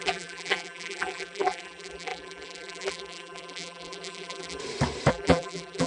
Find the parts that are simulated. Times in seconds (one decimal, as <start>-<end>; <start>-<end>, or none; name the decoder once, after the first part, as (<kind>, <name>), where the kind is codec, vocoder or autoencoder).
0.0-4.6 (vocoder, BigVGAN v2); 5.1-5.9